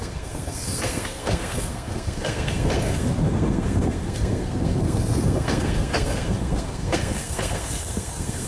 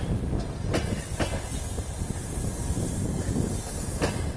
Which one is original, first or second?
second